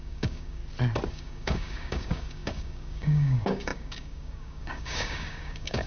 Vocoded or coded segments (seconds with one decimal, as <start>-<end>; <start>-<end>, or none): 0.0-0.6; 1.1-5.9